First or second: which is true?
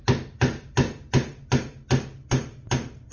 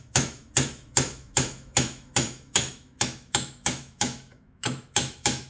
first